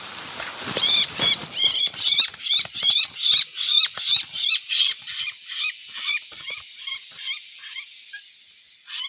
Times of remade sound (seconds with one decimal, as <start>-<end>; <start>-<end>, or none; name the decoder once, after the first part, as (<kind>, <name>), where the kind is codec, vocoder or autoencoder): 0.0-9.1 (vocoder, BigVGAN v2)